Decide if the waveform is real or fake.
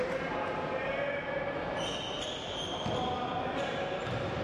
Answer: real